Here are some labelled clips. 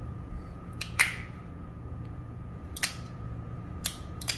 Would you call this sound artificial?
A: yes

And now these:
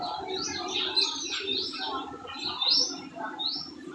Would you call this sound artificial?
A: no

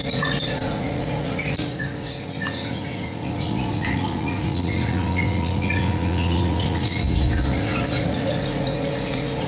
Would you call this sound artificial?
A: yes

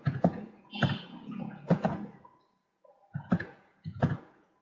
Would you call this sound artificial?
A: yes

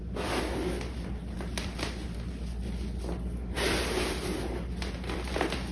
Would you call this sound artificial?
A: no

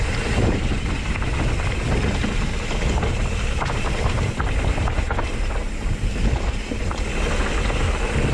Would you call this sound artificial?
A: no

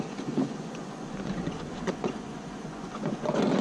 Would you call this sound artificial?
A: yes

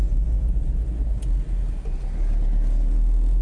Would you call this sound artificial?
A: no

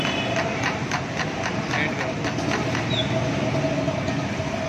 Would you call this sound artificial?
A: no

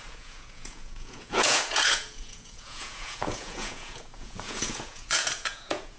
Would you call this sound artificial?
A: yes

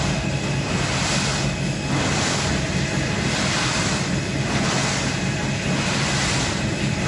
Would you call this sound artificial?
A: no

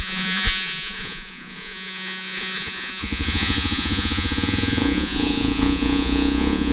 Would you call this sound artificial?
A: yes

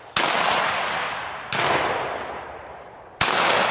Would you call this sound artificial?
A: no